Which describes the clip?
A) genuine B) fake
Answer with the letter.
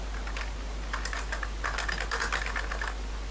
A